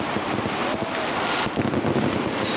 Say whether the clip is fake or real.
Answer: real